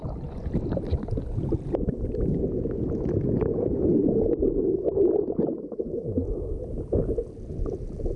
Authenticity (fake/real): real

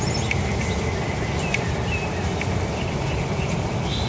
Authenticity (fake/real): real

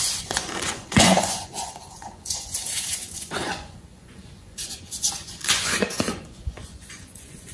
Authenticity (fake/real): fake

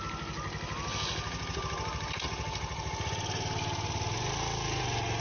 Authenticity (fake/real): real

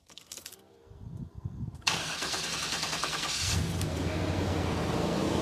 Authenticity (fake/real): fake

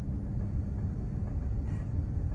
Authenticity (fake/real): real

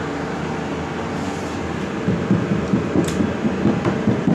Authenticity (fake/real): real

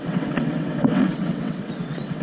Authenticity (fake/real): fake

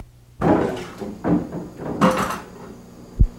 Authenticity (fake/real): real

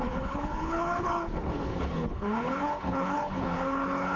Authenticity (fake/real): fake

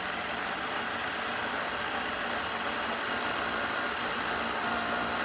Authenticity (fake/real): real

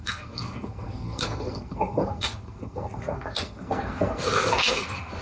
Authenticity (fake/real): fake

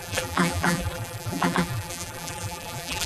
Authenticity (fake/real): fake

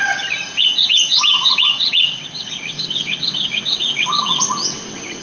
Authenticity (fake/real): fake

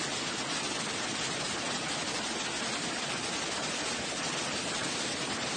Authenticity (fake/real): real